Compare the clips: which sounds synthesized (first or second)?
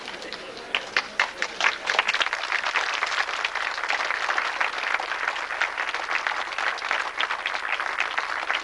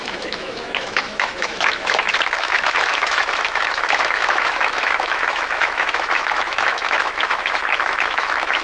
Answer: second